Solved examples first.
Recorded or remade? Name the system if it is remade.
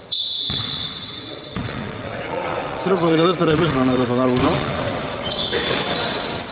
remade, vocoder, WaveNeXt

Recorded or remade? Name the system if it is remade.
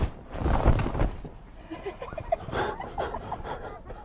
recorded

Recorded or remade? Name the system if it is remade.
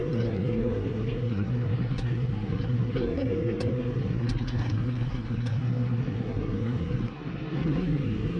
remade, codec, SNAC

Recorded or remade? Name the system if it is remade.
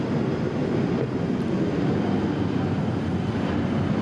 recorded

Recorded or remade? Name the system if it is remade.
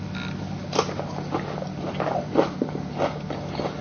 recorded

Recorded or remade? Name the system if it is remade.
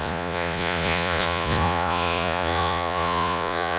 remade, vocoder, Vocos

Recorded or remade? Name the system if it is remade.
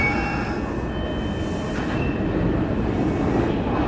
recorded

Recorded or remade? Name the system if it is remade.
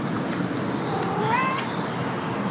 recorded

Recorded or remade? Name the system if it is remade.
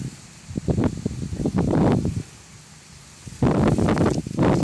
remade, vocoder, BigVGAN v2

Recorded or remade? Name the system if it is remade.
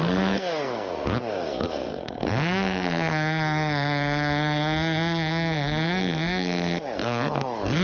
remade, codec, SNAC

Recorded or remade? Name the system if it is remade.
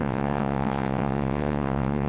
remade, vocoder, WaveNeXt